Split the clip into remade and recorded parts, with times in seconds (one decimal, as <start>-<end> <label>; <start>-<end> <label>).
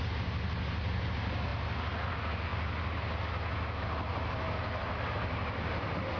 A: 0.0-6.2 recorded